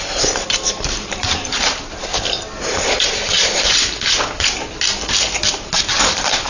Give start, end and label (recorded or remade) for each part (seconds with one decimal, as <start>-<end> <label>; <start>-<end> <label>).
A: 0.0-2.1 remade; 2.1-6.0 recorded; 6.0-6.5 remade